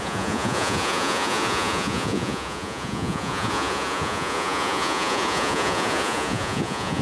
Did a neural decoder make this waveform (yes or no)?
yes